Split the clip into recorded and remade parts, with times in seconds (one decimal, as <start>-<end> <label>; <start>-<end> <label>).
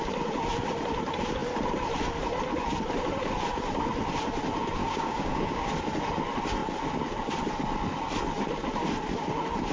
0.0-4.8 recorded; 4.8-5.7 remade; 5.7-9.7 recorded